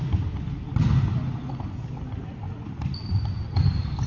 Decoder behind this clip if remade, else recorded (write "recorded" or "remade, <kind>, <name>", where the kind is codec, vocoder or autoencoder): recorded